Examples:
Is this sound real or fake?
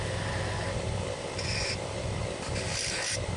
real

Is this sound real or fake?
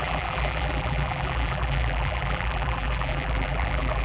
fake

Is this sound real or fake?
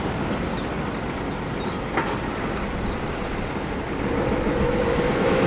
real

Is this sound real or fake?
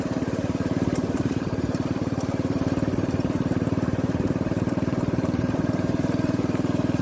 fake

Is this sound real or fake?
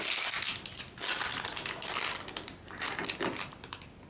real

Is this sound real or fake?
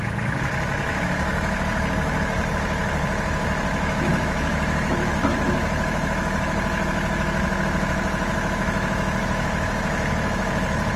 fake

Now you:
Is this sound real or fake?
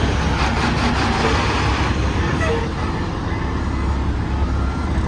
real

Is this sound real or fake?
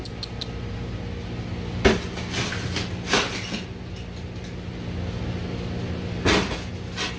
real